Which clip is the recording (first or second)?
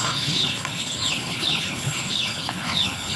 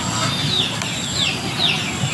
second